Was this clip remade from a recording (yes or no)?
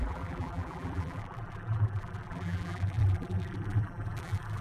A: yes